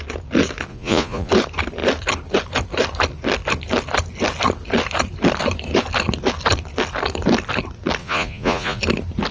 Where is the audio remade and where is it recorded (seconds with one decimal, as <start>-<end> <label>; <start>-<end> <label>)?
0.0-0.7 recorded; 0.7-1.3 remade; 1.3-8.0 recorded; 8.0-8.8 remade; 8.8-9.3 recorded